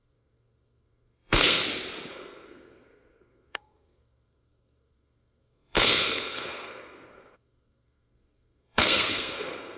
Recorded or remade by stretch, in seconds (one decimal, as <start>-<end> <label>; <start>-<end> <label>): 0.0-1.6 remade; 1.6-2.1 recorded; 2.1-9.8 remade